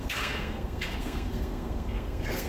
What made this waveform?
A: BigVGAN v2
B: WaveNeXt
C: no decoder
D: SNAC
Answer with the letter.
D